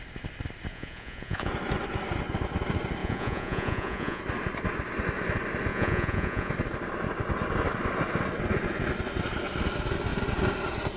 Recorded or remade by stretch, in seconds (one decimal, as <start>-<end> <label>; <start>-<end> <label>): 0.0-0.7 recorded; 0.7-1.5 remade; 1.5-3.0 recorded; 3.0-4.2 remade; 4.2-5.7 recorded; 5.7-6.5 remade; 6.5-11.0 recorded